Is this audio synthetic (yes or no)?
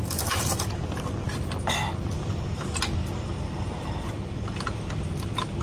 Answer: no